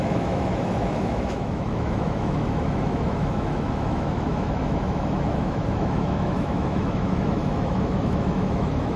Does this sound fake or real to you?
fake